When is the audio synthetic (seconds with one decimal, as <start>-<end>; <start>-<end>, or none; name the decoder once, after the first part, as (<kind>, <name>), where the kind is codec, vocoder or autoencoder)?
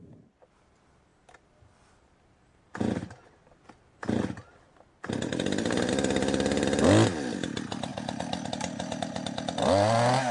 none